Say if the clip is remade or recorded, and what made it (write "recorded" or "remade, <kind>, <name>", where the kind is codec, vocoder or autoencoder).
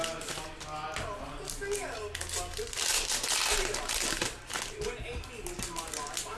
recorded